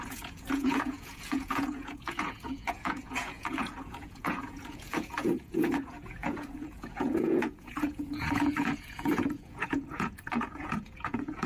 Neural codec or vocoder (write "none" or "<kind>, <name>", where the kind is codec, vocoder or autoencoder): vocoder, Vocos